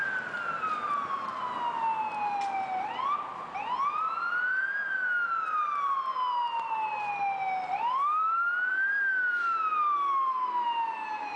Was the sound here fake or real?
real